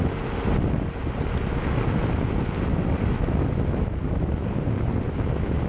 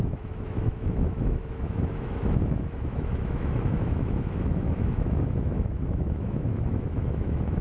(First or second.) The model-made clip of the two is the second